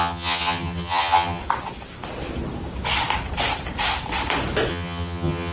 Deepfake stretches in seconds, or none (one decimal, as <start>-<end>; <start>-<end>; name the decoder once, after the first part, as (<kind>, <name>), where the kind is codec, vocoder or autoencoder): 0.0-1.4 (vocoder, HiFi-GAN); 4.7-5.5